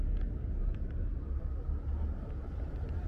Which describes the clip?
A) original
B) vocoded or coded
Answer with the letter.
A